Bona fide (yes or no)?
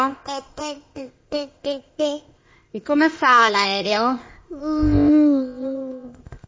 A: no